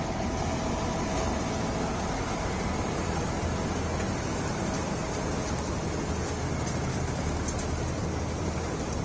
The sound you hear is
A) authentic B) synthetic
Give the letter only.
A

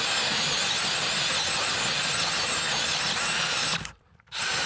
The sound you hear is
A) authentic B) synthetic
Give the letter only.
A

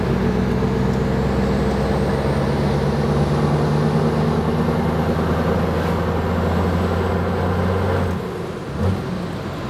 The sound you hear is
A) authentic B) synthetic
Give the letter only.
A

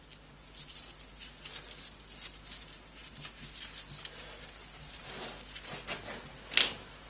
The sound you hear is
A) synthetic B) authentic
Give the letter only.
B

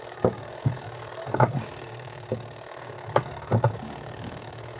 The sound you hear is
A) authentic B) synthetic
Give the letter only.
B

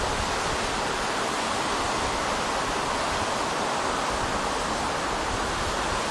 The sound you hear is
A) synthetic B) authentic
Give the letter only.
B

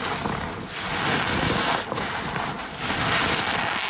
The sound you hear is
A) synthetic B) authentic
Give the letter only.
B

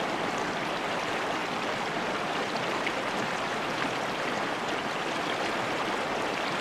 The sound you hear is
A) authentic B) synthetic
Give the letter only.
A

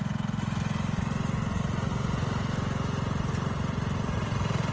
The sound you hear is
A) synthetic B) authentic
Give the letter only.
B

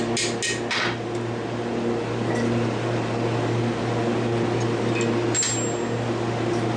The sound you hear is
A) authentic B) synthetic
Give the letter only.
A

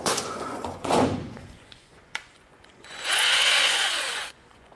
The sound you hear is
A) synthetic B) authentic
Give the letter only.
A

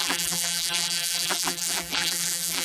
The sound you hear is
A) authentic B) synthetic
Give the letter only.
B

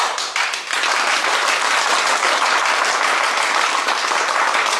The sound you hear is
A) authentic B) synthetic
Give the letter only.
A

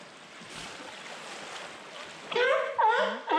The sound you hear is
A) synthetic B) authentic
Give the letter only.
B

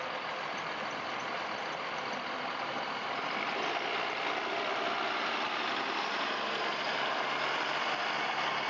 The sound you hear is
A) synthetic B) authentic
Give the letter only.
B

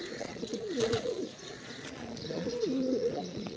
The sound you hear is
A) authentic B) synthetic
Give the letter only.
B